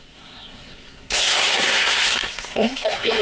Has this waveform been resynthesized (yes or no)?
yes